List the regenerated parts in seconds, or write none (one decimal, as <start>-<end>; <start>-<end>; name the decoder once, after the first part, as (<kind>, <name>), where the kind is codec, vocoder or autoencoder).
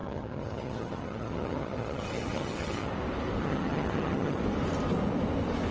0.0-2.9 (vocoder, HiFi-GAN); 3.4-4.4